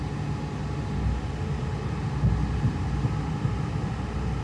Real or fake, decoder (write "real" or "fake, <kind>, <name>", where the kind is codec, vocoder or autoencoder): real